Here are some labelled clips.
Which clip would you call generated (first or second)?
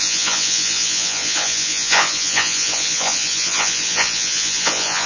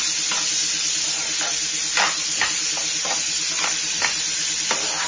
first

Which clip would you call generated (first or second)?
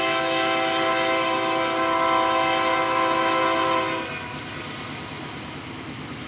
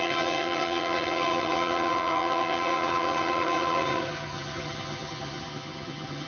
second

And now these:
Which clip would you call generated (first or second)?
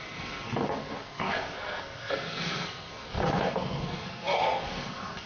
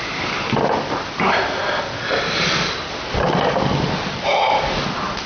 first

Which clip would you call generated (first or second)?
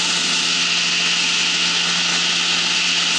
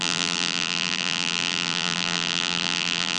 second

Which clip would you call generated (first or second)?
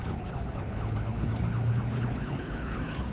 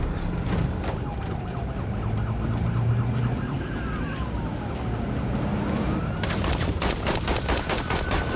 first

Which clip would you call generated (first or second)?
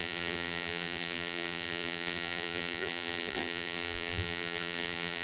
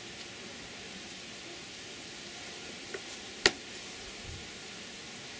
first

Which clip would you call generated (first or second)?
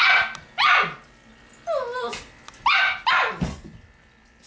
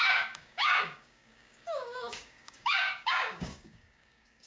second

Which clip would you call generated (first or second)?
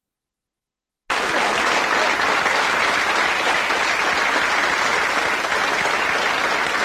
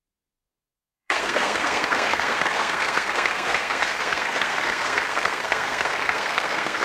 second